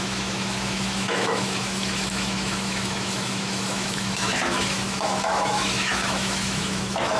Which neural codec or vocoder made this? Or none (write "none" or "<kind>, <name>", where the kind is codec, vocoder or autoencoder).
autoencoder, DAC-VAE